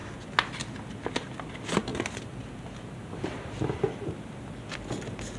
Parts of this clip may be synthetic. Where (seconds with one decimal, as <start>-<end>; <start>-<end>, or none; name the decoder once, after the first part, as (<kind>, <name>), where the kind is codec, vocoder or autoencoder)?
none

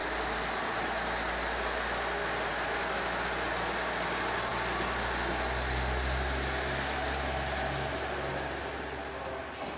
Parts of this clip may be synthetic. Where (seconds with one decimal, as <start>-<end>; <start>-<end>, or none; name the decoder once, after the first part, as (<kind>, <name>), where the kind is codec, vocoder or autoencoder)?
none

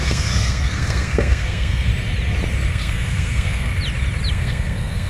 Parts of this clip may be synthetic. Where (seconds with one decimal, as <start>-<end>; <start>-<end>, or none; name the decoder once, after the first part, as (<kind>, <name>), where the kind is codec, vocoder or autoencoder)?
0.0-1.9 (codec, SNAC); 2.7-3.7; 4.3-5.1

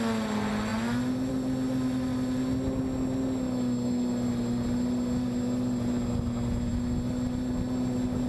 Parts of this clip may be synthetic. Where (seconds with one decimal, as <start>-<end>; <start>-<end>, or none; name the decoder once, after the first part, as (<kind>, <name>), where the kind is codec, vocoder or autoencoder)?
none

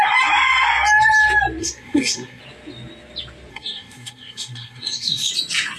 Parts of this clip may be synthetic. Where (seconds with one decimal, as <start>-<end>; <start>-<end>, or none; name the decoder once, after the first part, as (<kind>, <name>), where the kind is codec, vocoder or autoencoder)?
1.6-2.4 (codec, SNAC); 3.5-5.3

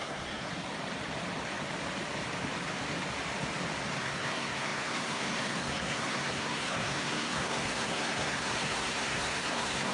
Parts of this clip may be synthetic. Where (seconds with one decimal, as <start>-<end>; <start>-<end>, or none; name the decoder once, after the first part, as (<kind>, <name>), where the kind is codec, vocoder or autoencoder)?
0.0-0.5 (codec, SNAC); 4.0-9.9

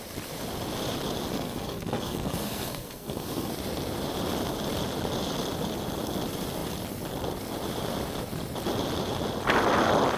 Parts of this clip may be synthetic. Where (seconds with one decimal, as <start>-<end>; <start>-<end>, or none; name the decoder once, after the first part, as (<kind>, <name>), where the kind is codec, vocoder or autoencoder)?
1.3-3.5 (codec, SNAC)